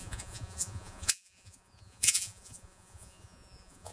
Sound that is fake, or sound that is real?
fake